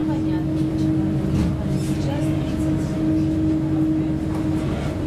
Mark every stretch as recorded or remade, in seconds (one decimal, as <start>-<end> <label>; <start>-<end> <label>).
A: 0.0-5.1 recorded